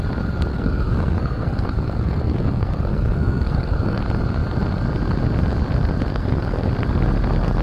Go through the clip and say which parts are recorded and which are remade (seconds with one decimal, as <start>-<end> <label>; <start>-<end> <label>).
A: 0.0-0.5 recorded; 0.5-4.0 remade; 4.0-6.1 recorded; 6.1-6.7 remade; 6.7-7.6 recorded